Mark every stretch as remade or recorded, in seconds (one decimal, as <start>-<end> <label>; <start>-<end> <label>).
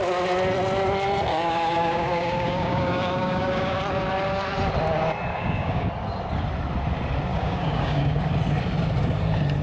0.0-1.3 recorded; 1.3-3.8 remade; 3.8-5.3 recorded; 5.3-5.9 remade; 5.9-7.3 recorded; 7.3-8.2 remade; 8.2-9.6 recorded